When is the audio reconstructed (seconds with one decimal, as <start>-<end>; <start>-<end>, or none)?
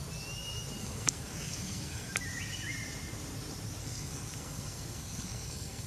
0.8-2.1; 3.8-5.9